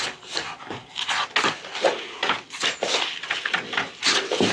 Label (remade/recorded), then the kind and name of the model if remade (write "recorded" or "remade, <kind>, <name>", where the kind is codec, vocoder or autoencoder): recorded